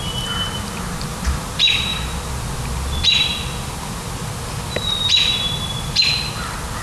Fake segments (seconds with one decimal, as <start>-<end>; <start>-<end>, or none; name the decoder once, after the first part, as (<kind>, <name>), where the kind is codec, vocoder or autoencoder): none